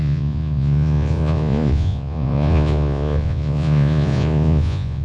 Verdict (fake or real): fake